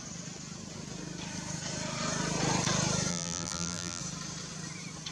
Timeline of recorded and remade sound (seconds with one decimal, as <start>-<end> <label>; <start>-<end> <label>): 0.0-3.1 recorded; 3.1-4.0 remade; 4.0-5.1 recorded